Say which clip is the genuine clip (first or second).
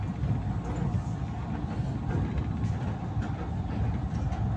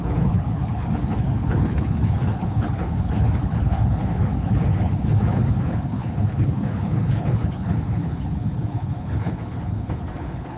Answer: first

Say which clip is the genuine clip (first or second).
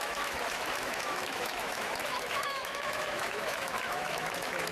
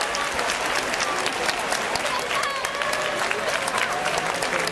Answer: second